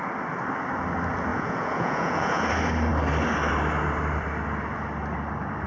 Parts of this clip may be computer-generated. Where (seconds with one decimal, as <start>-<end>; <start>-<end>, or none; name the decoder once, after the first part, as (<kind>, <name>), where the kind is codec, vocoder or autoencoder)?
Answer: 1.3-2.5 (vocoder, Vocos)